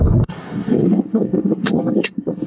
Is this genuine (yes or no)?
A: no